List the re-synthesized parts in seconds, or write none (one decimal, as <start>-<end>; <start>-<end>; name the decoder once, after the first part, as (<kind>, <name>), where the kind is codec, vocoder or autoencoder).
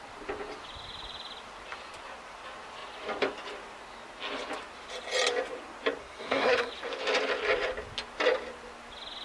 6.0-6.7 (codec, SNAC)